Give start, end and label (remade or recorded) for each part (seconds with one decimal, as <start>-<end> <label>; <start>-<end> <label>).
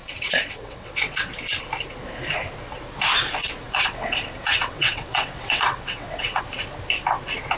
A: 0.0-1.3 remade; 1.3-3.6 recorded; 3.6-6.4 remade; 6.4-7.6 recorded